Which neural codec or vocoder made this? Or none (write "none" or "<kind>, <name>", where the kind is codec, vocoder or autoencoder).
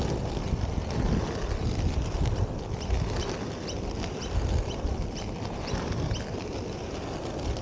none